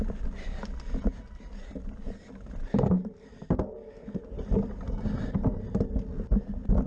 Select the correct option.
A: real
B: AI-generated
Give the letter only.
A